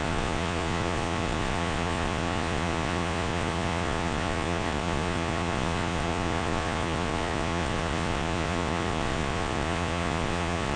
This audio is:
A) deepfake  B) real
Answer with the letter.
A